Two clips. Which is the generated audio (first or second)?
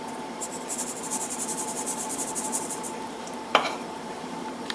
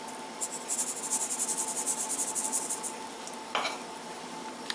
first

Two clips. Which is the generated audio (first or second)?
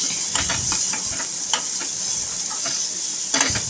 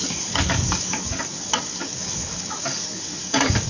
second